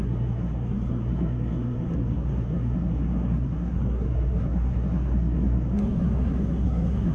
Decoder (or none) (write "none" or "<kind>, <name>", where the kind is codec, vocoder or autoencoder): codec, SNAC